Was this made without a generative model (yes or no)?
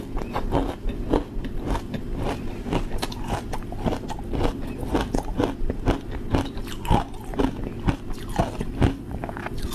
yes